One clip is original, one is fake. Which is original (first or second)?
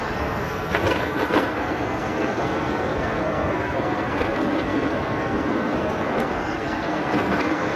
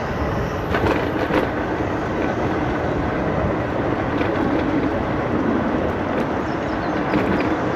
second